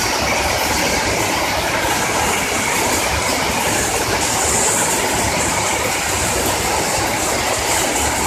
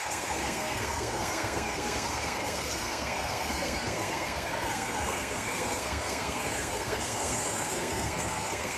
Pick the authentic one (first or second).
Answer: first